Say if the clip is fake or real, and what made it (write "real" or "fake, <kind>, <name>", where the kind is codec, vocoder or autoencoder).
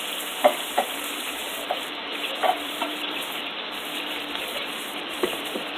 fake, vocoder, BigVGAN v2